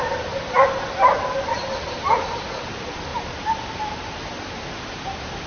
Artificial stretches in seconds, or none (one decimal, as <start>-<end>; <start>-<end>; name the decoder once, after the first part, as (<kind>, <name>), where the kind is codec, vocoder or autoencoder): 1.5-2.4 (vocoder, BigVGAN v2); 3.1-4.8